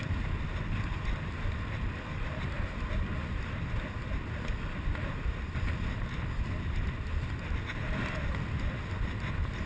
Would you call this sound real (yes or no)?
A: yes